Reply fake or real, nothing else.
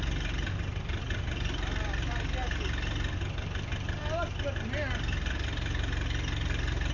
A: real